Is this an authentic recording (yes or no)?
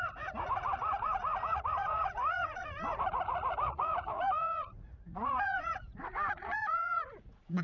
no